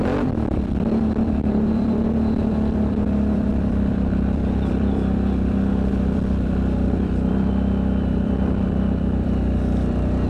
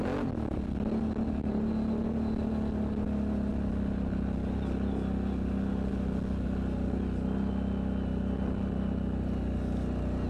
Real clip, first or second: second